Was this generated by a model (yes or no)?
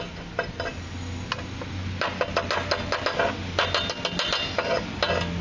no